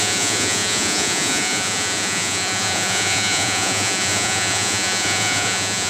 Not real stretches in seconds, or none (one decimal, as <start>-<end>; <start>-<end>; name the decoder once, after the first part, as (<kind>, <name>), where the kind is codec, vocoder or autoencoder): 0.0-5.9 (vocoder, Vocos)